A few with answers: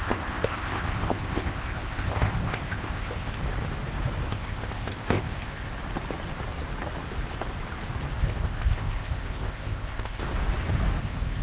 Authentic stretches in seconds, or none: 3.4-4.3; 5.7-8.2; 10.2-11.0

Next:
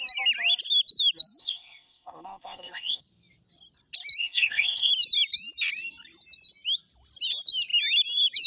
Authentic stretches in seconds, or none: 0.0-1.4; 3.0-4.2; 4.9-8.5

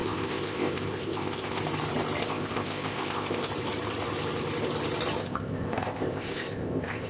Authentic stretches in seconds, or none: 1.6-2.2; 3.5-5.2

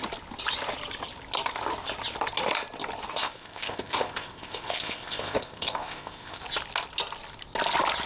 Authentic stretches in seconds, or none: 0.0-3.1; 6.4-8.1

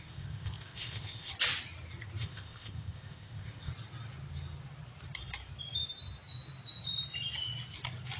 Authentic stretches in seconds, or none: 1.3-2.2; 3.7-8.2

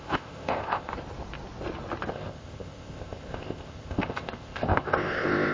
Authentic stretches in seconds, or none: 0.9-2.1

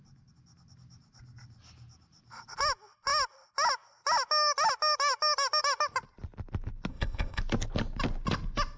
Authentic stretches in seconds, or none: 0.0-6.9; 7.4-8.8

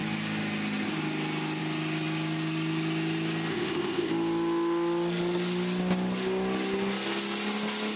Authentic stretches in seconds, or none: 0.0-3.5; 4.1-8.0